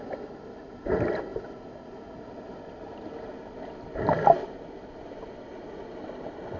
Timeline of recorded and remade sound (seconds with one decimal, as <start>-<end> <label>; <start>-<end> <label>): 0.0-6.6 recorded